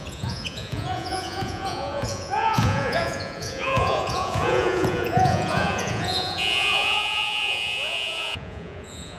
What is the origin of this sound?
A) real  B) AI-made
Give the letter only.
B